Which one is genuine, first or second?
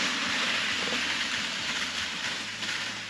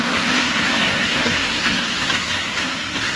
first